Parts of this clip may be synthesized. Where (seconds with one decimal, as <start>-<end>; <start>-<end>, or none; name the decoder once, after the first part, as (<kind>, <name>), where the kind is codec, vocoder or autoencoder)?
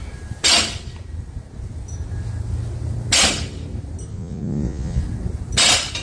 4.1-5.0 (vocoder, Vocos)